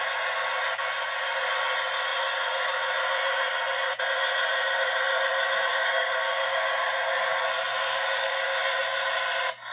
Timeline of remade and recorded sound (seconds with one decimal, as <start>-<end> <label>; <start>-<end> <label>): 0.0-5.7 recorded; 5.7-6.6 remade; 6.6-7.7 recorded; 7.7-8.8 remade; 8.8-9.7 recorded